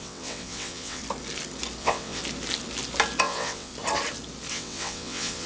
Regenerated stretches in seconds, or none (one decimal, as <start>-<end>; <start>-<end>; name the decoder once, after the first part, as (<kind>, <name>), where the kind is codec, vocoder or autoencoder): 0.0-1.0 (vocoder, WaveNeXt); 1.8-2.2; 3.2-3.7; 4.5-5.5